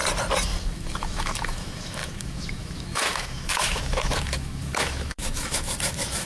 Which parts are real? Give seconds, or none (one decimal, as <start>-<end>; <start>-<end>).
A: 0.0-0.6